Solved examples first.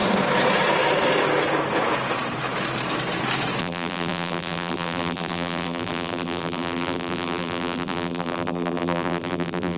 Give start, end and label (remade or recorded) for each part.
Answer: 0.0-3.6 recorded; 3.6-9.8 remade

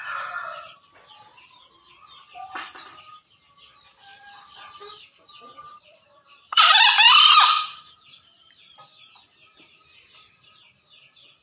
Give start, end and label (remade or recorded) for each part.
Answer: 0.0-3.9 recorded; 3.9-8.6 remade; 8.6-11.4 recorded

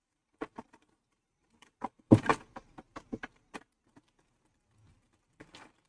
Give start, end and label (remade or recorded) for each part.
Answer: 0.0-2.3 remade; 2.3-5.9 recorded

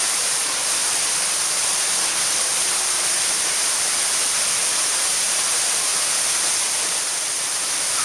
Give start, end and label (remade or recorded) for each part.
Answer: 0.0-0.8 remade; 0.8-5.3 recorded; 5.3-5.9 remade; 5.9-6.6 recorded; 6.6-8.0 remade

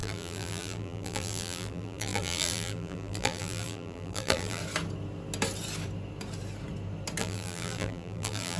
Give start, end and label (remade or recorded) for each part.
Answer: 0.0-4.6 remade; 4.6-7.2 recorded; 7.2-8.6 remade

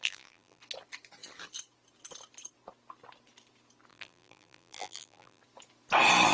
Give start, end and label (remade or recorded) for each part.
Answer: 0.0-0.6 remade; 0.6-3.9 recorded; 3.9-5.4 remade; 5.4-6.3 recorded

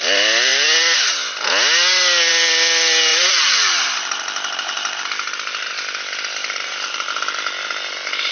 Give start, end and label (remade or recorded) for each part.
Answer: 0.0-3.1 recorded; 3.1-5.7 remade; 5.7-6.4 recorded; 6.4-7.1 remade; 7.1-8.3 recorded

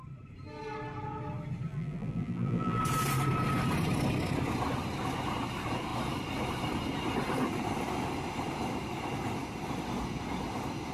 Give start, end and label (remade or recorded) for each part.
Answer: 0.0-1.7 recorded; 1.7-2.8 remade; 2.8-10.9 recorded